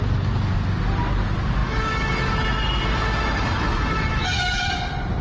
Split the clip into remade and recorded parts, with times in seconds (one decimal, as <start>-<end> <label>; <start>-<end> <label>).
0.0-1.6 recorded; 1.6-4.7 remade; 4.7-5.2 recorded